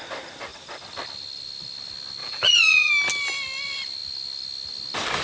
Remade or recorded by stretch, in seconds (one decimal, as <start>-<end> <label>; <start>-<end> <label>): 0.0-2.2 recorded; 2.2-2.9 remade; 2.9-5.2 recorded